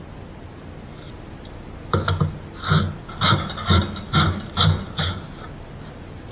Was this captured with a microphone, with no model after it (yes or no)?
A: yes